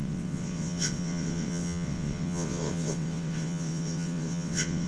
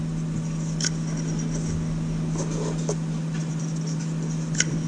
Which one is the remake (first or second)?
first